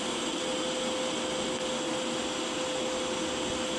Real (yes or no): yes